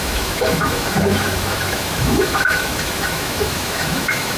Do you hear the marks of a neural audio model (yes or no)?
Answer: yes